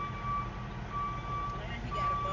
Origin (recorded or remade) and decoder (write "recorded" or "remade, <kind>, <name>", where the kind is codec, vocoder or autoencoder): recorded